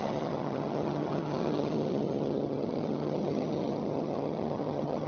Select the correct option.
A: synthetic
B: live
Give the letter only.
A